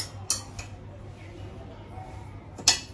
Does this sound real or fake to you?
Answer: real